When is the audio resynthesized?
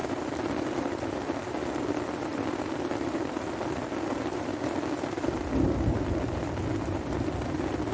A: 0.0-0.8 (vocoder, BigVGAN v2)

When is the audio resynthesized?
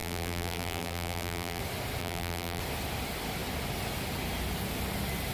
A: 0.0-1.6 (vocoder, BigVGAN v2); 2.0-2.6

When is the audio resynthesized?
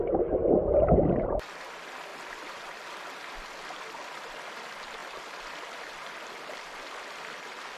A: none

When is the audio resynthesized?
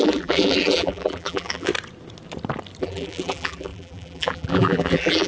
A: 0.0-1.7 (vocoder, BigVGAN v2); 2.8-5.3